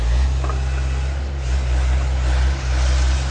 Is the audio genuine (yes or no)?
yes